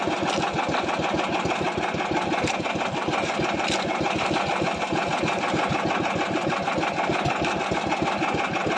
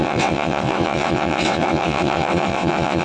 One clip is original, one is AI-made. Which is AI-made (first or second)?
second